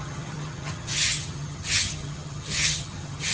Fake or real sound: fake